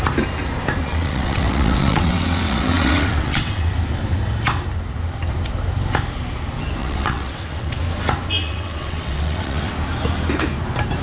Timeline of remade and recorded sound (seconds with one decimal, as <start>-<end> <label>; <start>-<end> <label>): 0.0-0.8 recorded; 0.8-3.7 remade; 3.7-6.8 recorded; 6.8-7.8 remade; 7.8-8.4 recorded; 8.4-9.7 remade; 9.7-11.0 recorded